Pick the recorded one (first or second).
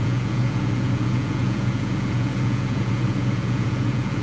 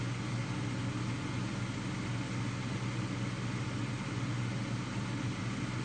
second